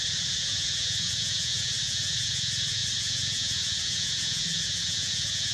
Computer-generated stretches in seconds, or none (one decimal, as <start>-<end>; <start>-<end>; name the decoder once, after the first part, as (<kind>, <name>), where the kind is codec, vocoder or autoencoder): 0.0-5.5 (vocoder, Vocos)